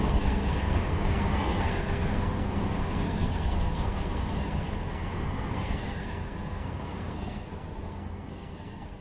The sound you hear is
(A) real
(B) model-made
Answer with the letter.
B